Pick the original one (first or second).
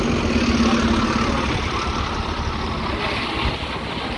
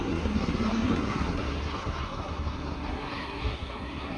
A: first